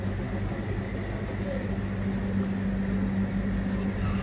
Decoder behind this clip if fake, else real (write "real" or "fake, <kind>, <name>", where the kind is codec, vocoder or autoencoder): real